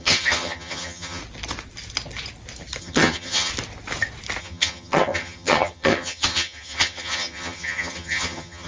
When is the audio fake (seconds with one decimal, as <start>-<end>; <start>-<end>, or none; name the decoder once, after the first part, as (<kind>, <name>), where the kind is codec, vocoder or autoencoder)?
0.0-1.2 (vocoder, HiFi-GAN); 2.8-3.5; 4.4-8.7